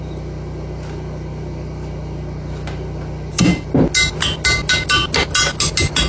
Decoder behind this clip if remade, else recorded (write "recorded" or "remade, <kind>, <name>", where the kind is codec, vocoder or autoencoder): recorded